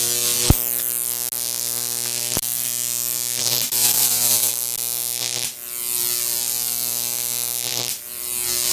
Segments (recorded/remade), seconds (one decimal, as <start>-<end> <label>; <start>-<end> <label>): 0.0-3.4 recorded; 3.4-4.5 remade; 4.5-8.7 recorded